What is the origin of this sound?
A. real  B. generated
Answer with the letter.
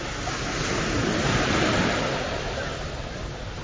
A